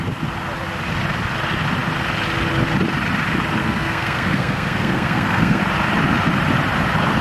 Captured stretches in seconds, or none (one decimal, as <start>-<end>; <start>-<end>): 0.0-3.6; 5.6-7.2